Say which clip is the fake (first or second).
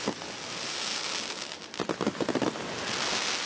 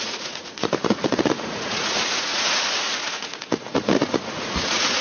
second